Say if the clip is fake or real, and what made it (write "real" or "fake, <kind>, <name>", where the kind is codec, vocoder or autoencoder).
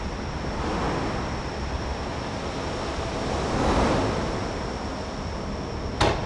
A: real